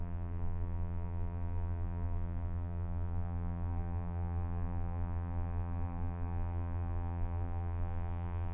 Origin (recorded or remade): remade